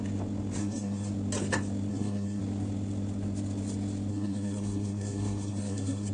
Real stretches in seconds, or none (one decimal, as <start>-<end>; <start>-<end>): 0.0-0.6; 1.1-1.9; 2.4-4.1